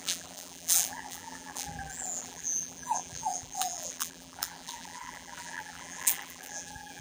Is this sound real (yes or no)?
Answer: no